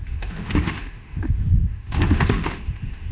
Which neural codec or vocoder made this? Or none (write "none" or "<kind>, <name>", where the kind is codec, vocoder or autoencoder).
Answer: autoencoder, DAC-VAE